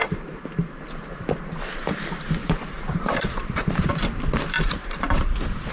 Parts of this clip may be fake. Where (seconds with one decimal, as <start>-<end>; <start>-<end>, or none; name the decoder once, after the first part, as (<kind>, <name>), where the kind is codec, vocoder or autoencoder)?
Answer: 2.4-3.9 (vocoder, BigVGAN v2); 4.8-5.7